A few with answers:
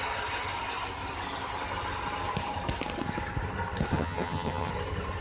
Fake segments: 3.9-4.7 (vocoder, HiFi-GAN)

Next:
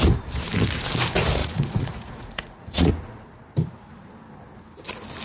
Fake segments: 1.4-2.9 (vocoder, Vocos)